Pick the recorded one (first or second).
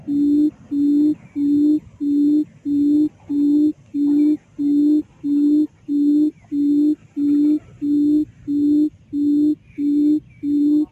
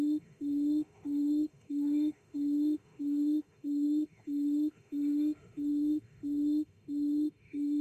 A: first